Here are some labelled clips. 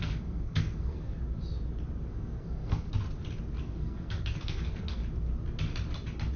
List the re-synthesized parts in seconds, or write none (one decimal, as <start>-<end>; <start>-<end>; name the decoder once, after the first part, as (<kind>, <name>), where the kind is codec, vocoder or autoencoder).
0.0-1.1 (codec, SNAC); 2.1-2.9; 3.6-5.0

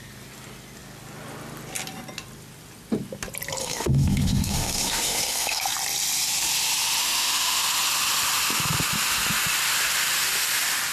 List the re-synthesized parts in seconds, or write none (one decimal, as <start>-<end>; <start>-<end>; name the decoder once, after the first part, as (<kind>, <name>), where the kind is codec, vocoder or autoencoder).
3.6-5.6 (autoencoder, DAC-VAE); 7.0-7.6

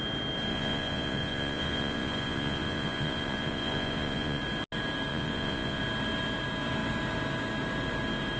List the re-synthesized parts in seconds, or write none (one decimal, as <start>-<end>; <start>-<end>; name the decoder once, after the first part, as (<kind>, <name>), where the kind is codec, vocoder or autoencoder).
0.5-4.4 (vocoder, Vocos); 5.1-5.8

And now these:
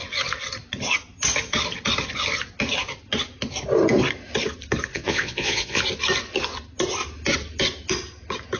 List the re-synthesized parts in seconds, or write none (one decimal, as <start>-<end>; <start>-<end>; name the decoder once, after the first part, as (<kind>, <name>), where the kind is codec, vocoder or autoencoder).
4.9-5.8 (vocoder, Vocos)

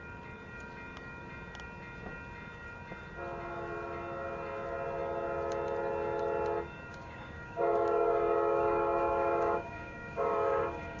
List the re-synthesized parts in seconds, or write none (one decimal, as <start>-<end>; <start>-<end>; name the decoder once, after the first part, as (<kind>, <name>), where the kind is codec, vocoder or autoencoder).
6.9-11.0 (codec, DAC)

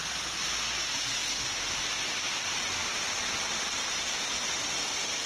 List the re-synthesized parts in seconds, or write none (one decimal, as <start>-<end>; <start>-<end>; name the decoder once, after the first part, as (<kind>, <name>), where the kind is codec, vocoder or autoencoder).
none

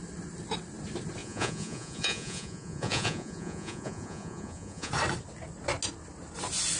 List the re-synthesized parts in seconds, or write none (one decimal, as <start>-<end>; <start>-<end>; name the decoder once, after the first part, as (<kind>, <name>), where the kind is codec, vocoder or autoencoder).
1.2-4.9 (vocoder, Vocos)

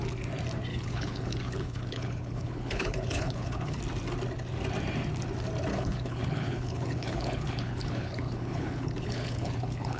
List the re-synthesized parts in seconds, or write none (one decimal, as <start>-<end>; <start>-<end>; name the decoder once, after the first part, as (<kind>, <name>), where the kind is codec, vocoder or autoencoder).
0.7-3.8 (codec, HILCodec); 5.7-10.0